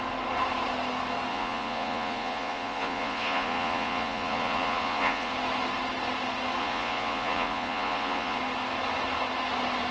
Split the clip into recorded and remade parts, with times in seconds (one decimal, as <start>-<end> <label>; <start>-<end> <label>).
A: 0.0-1.3 recorded; 1.3-5.3 remade; 5.3-6.6 recorded; 6.6-8.4 remade; 8.4-9.9 recorded

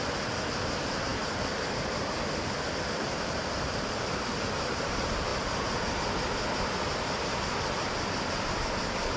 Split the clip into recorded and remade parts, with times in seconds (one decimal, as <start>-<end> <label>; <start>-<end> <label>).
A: 0.0-9.2 recorded

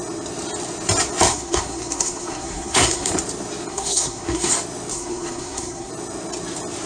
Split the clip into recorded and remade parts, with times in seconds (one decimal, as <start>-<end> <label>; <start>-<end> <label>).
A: 0.0-1.3 recorded; 1.3-3.1 remade; 3.1-3.7 recorded; 3.7-4.5 remade; 4.5-4.9 recorded; 4.9-5.9 remade; 5.9-6.9 recorded